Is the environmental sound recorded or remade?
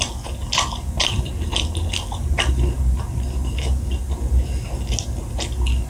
recorded